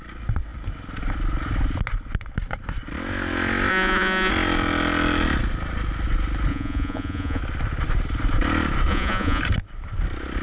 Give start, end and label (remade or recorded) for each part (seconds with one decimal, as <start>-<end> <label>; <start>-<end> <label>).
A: 0.0-3.7 recorded; 3.7-4.3 remade; 4.3-6.5 recorded; 6.5-7.4 remade; 7.4-8.9 recorded; 8.9-9.4 remade; 9.4-10.4 recorded